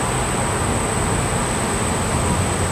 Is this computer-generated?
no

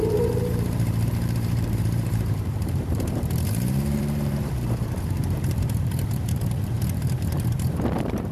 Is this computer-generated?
yes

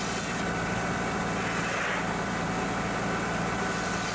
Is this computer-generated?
no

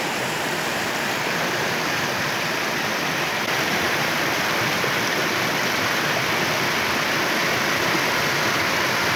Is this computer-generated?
no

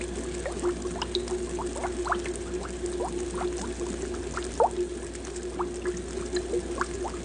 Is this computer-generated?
no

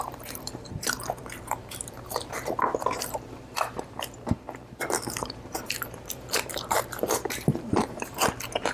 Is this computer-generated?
yes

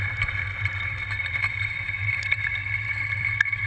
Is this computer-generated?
yes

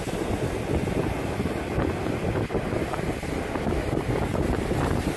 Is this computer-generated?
no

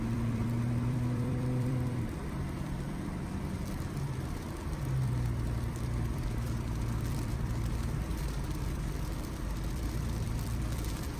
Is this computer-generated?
yes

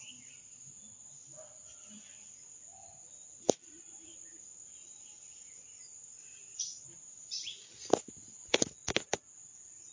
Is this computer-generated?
no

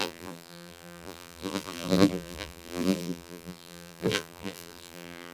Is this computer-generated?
yes